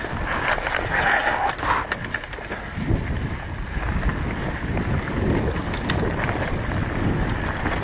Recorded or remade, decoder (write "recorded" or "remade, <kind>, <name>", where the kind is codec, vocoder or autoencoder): recorded